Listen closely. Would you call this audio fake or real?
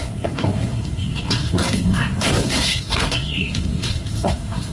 fake